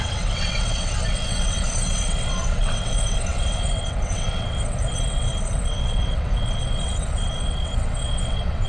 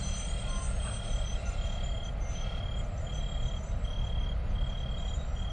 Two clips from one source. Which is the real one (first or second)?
second